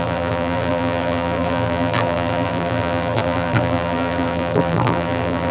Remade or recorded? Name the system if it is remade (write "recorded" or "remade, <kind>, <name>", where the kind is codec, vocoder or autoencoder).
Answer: remade, vocoder, BigVGAN v2